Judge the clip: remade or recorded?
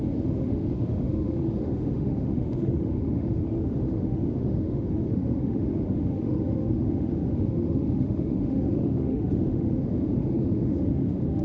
remade